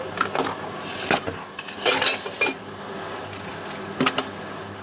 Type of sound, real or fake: real